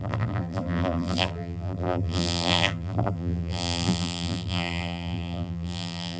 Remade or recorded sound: remade